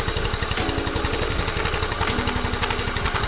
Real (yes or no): yes